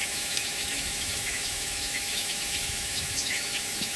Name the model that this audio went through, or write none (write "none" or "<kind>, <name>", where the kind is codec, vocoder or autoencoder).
autoencoder, DAC-VAE